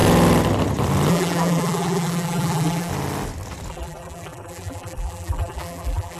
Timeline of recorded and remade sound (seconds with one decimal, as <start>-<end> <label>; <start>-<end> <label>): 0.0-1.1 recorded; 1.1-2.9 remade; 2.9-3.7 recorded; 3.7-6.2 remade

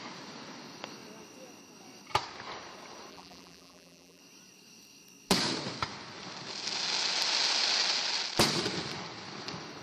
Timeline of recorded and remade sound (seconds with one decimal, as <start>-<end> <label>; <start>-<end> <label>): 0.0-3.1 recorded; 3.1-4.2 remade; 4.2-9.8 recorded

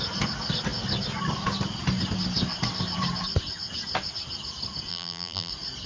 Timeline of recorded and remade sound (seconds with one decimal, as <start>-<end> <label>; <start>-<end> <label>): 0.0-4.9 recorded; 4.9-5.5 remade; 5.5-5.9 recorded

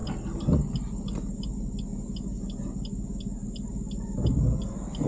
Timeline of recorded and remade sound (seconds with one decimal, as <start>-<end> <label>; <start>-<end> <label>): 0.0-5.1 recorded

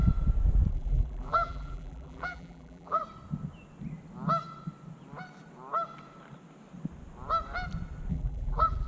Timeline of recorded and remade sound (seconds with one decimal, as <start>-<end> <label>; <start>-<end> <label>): 0.0-0.7 recorded; 0.7-3.0 remade; 3.0-8.1 recorded; 8.1-8.9 remade